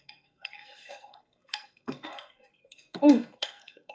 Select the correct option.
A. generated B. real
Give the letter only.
A